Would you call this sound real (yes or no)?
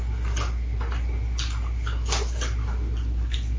yes